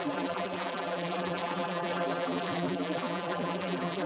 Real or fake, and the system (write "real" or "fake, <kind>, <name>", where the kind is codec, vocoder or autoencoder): fake, vocoder, BigVGAN v2